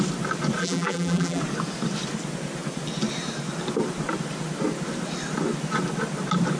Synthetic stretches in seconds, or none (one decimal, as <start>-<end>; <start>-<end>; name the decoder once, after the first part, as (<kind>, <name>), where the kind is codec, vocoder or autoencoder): 0.6-1.4 (vocoder, BigVGAN v2)